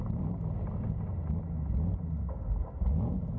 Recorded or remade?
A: recorded